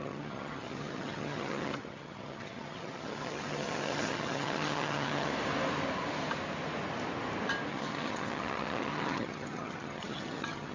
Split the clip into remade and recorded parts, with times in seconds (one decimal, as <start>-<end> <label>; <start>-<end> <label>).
0.0-5.3 remade; 5.3-7.7 recorded; 7.7-10.7 remade